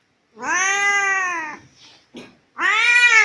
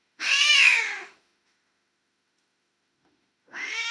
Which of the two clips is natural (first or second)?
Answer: first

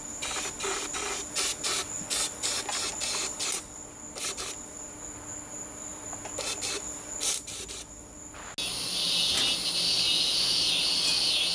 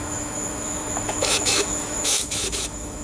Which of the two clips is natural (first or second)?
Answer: first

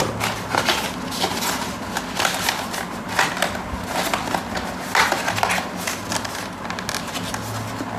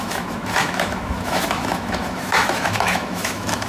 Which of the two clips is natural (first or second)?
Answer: first